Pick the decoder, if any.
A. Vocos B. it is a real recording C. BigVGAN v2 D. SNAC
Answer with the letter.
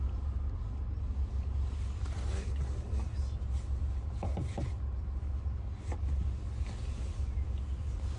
B